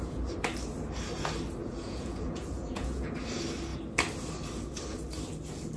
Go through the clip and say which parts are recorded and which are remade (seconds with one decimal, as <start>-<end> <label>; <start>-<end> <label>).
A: 0.0-1.6 recorded; 1.6-3.1 remade; 3.1-5.8 recorded